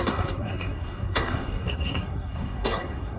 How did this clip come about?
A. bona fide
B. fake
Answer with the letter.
B